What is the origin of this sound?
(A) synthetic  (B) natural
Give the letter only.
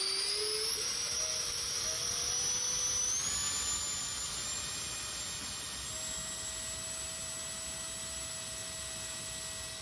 B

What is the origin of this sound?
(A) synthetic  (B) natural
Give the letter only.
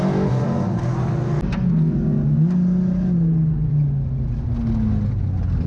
B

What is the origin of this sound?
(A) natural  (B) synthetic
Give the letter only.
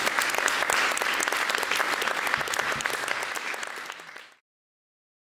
A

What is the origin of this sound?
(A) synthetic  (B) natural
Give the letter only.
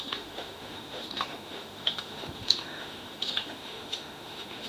A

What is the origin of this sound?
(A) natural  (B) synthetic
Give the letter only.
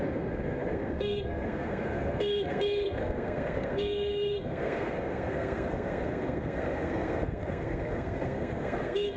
B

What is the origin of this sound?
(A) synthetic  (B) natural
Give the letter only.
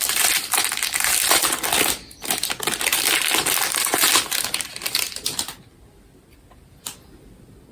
B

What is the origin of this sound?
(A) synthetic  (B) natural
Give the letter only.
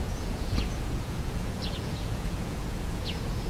A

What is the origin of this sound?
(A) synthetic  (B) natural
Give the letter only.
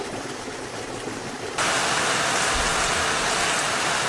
B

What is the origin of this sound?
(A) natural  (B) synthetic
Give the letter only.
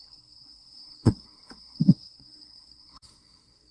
B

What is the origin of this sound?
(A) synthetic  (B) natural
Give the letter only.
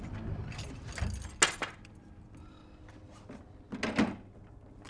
B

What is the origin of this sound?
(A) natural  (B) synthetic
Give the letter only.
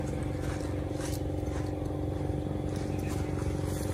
A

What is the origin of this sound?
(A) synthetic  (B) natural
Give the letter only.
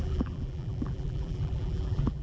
A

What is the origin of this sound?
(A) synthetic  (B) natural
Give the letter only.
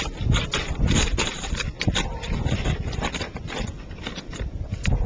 B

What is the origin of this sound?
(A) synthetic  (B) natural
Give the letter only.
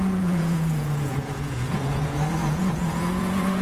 A